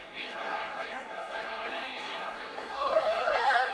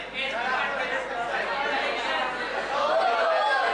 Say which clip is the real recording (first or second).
second